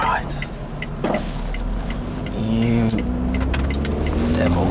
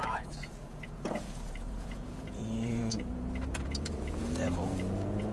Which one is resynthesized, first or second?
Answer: second